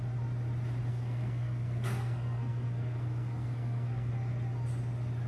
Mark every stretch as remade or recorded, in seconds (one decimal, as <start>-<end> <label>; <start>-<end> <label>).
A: 0.0-0.9 recorded; 0.9-4.1 remade; 4.1-5.3 recorded